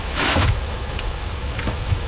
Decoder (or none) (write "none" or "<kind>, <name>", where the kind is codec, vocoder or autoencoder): autoencoder, DAC-VAE